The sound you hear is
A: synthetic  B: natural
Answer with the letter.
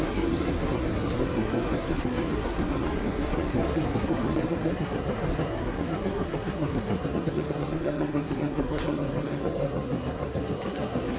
A